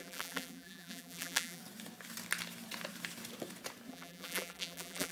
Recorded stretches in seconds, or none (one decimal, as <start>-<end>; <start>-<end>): 1.6-3.9